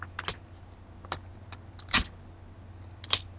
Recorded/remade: recorded